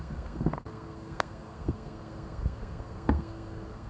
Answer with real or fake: fake